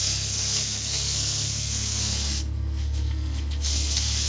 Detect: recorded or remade remade